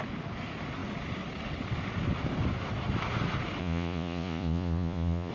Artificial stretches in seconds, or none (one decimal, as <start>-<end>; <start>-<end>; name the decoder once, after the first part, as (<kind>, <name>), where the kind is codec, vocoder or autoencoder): 3.6-5.3 (vocoder, Vocos)